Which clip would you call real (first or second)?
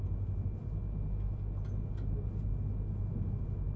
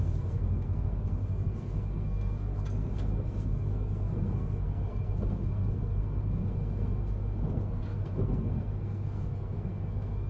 first